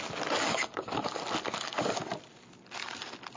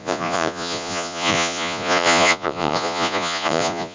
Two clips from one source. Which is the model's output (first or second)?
second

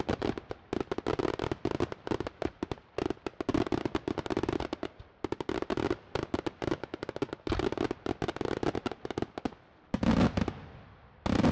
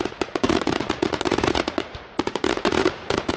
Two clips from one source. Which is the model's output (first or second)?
second